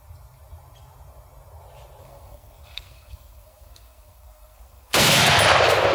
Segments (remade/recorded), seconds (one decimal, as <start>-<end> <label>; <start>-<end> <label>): 0.0-2.0 recorded; 2.0-5.4 remade; 5.4-5.9 recorded